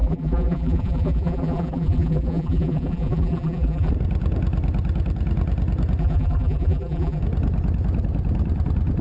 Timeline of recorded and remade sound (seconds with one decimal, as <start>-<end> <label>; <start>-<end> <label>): 0.0-3.9 remade; 3.9-6.0 recorded; 6.0-7.2 remade; 7.2-9.0 recorded